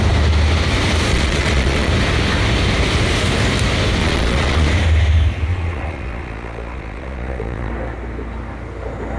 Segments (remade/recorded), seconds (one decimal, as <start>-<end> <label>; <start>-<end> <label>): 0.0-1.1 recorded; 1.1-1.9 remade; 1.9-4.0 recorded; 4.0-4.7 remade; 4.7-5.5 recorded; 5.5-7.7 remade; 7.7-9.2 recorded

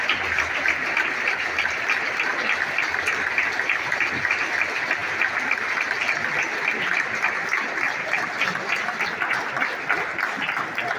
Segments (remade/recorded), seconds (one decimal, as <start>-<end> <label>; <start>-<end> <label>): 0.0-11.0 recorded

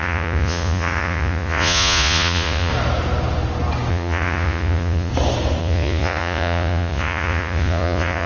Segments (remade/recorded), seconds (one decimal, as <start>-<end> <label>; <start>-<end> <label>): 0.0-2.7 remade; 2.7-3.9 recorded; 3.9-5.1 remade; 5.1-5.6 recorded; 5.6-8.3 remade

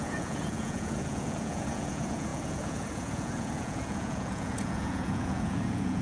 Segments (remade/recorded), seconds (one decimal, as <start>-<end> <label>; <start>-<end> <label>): 0.0-6.0 remade

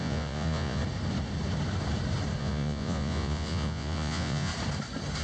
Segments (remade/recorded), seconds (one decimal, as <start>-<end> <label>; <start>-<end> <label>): 0.0-0.8 remade; 0.8-2.4 recorded; 2.4-4.5 remade; 4.5-5.2 recorded